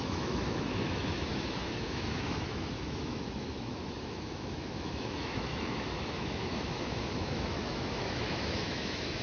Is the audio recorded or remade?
remade